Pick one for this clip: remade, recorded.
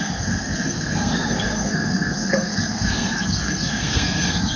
remade